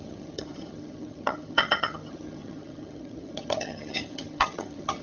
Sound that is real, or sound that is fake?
fake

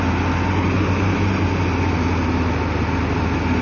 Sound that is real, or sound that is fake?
real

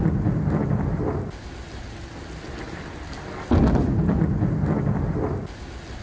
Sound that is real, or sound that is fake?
real